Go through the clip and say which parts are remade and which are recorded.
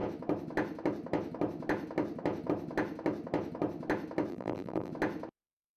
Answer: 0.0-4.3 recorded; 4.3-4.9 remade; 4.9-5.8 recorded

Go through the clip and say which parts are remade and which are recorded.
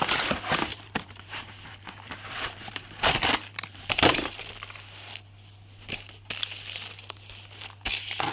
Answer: 0.0-0.7 recorded; 0.7-4.4 remade; 4.4-8.3 recorded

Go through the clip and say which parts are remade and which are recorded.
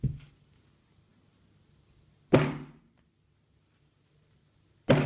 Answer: 0.0-5.1 recorded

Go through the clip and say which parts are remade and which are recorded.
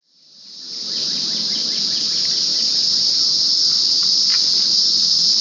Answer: 0.0-5.4 recorded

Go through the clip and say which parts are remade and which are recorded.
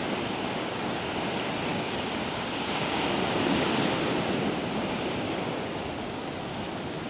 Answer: 0.0-0.6 recorded; 0.6-1.2 remade; 1.2-1.7 recorded; 1.7-3.0 remade; 3.0-4.6 recorded; 4.6-6.2 remade; 6.2-7.1 recorded